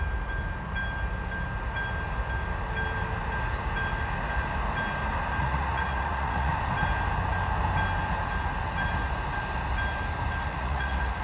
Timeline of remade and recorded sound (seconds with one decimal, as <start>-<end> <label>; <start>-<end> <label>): 0.0-5.4 recorded; 5.4-6.5 remade; 6.5-10.5 recorded; 10.5-11.2 remade